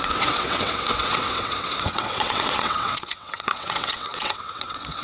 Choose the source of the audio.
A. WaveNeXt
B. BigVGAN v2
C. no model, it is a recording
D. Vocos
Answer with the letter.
A